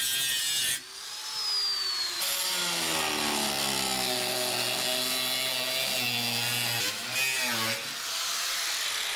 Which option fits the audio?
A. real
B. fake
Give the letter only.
A